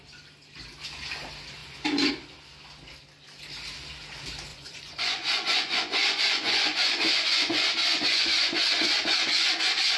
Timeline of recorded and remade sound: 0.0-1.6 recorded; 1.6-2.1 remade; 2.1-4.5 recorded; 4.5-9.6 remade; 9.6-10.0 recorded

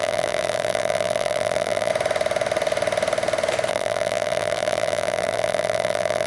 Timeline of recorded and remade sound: 0.0-1.9 remade; 1.9-3.7 recorded; 3.7-6.3 remade

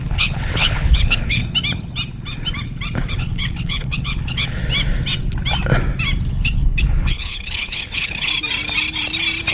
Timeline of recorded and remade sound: 0.0-1.4 remade; 1.4-3.1 recorded; 3.1-4.6 remade; 4.6-6.3 recorded; 6.3-8.3 remade; 8.3-9.5 recorded